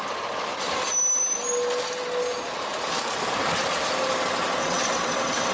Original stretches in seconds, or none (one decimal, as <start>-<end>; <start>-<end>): 0.0-4.6